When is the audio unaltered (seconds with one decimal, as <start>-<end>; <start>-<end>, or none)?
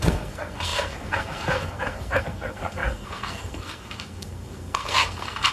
none